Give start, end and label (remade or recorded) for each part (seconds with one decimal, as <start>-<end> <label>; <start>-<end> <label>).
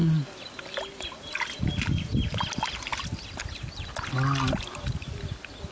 0.0-5.7 recorded